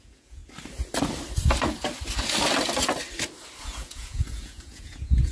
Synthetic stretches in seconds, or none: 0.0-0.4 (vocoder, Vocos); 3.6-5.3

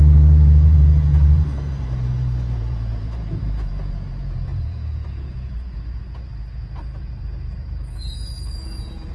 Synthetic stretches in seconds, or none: 0.0-9.1 (vocoder, Vocos)

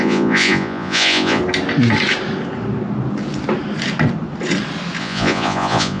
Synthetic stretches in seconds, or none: 0.0-1.4 (vocoder, Vocos); 5.0-6.0

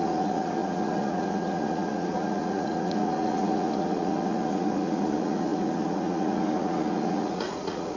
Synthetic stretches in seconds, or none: 0.0-8.0 (vocoder, Vocos)

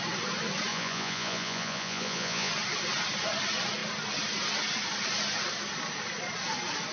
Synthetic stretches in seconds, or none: 0.7-2.5 (vocoder, Vocos)

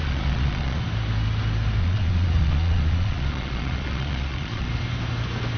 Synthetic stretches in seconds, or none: 0.0-0.8 (vocoder, Vocos); 1.8-4.7

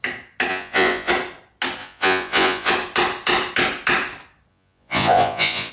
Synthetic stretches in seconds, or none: 0.5-1.1 (vocoder, Vocos); 1.8-2.7; 4.5-5.7

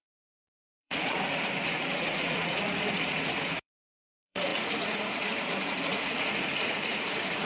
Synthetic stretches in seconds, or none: 0.0-7.5 (vocoder, Vocos)